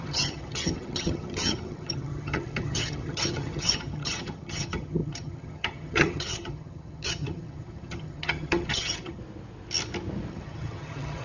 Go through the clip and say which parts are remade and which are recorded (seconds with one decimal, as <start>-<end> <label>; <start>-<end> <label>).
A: 0.0-9.2 remade; 9.2-10.3 recorded; 10.3-11.2 remade